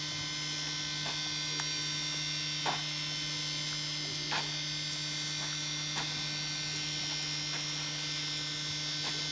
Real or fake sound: real